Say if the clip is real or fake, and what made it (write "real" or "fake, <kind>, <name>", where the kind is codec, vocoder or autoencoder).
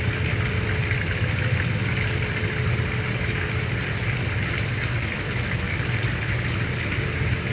fake, vocoder, BigVGAN v2